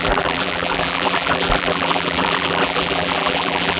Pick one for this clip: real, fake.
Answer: fake